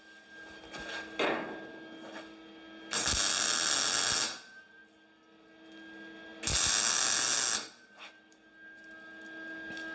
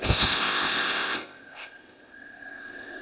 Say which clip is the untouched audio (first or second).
first